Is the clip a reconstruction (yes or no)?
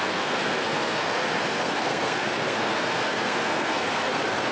yes